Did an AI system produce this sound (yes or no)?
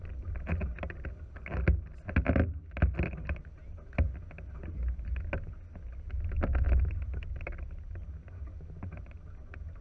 no